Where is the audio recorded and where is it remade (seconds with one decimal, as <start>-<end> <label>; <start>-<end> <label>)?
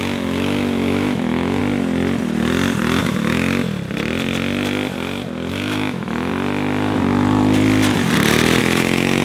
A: 0.0-1.6 remade; 1.6-3.0 recorded; 3.0-3.6 remade; 3.6-5.5 recorded; 5.5-6.3 remade; 6.3-8.6 recorded; 8.6-9.2 remade